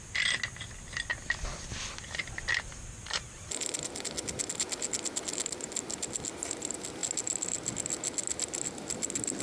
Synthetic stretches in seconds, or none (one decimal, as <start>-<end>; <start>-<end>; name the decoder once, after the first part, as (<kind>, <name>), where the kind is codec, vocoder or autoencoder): none